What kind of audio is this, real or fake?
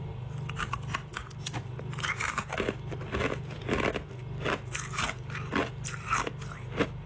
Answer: real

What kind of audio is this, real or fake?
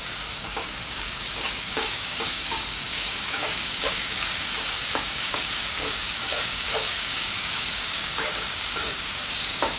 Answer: fake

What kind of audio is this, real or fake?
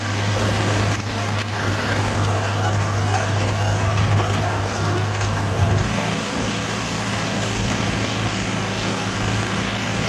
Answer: fake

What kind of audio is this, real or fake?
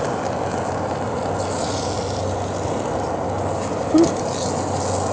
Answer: real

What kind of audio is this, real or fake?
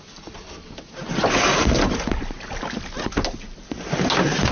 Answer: real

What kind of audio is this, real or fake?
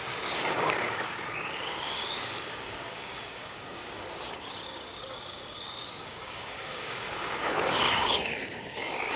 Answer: fake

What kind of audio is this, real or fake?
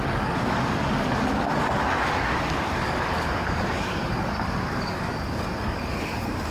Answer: fake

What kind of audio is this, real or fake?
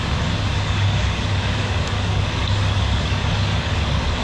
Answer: fake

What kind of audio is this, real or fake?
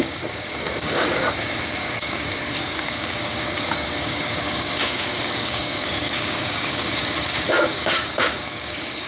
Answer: fake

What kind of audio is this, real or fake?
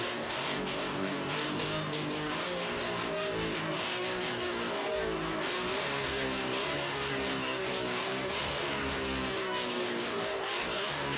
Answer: fake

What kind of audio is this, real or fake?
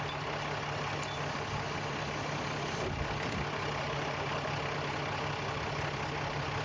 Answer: real